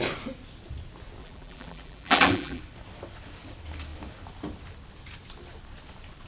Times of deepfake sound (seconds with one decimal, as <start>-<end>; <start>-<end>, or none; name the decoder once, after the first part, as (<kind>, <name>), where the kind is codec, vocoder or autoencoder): 1.2-2.6 (vocoder, BigVGAN v2)